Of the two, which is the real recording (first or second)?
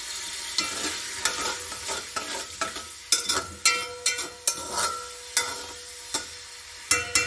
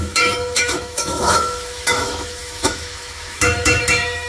first